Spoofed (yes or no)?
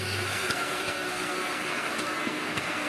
yes